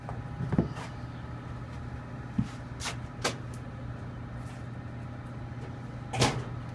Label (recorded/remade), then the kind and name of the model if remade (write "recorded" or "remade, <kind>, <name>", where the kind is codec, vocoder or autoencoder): recorded